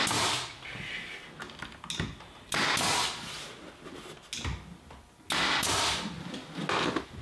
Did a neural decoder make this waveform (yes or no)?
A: no